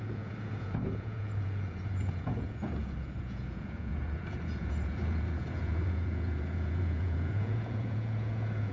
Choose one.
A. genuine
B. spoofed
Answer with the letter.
B